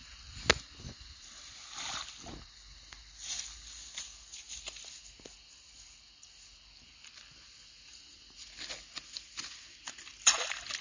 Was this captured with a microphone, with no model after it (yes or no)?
yes